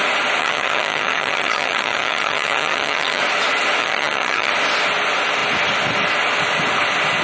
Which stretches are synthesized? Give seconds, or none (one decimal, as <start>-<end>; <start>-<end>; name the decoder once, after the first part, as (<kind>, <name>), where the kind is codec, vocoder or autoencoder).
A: 0.4-3.2 (vocoder, HiFi-GAN); 3.8-4.5